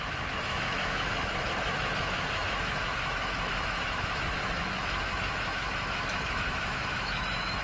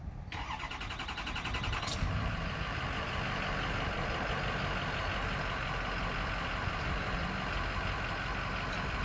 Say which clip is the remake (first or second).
first